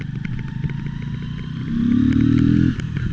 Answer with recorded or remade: recorded